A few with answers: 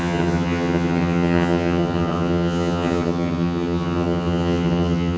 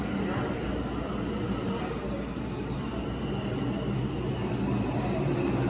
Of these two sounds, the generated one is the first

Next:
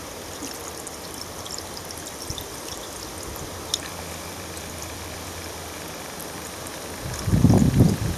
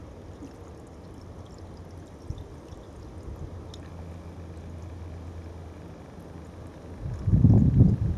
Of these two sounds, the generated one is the first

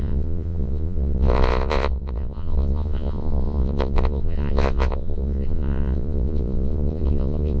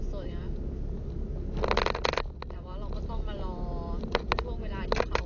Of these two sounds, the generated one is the first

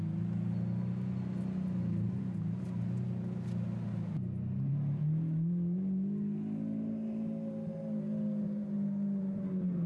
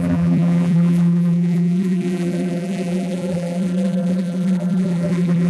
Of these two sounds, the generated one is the second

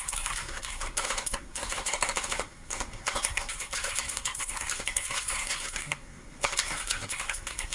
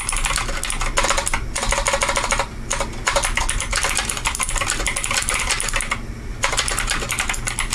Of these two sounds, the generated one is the first